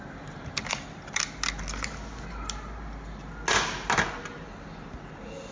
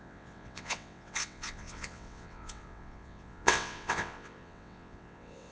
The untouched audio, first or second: first